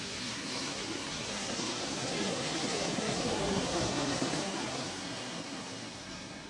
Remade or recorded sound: remade